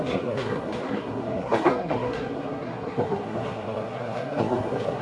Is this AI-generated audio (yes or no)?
yes